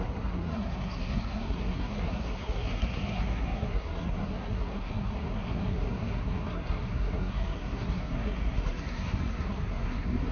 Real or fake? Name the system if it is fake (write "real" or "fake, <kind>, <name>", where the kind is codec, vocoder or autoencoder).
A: fake, codec, SNAC